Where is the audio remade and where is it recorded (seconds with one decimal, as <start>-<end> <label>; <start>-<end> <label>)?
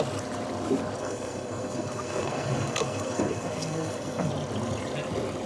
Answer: 0.0-1.0 recorded; 1.0-4.3 remade; 4.3-5.5 recorded